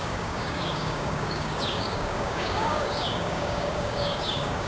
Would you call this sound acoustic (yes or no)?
no